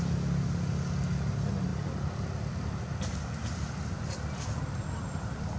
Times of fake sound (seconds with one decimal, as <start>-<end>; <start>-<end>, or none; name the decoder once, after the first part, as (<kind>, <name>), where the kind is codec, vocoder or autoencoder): none